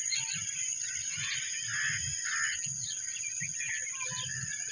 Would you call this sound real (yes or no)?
yes